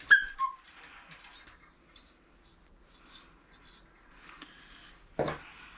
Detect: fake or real real